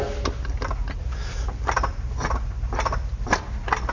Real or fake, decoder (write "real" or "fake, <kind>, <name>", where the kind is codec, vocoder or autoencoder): real